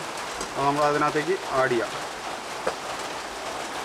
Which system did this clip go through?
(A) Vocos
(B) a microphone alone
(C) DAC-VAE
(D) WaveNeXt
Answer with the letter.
B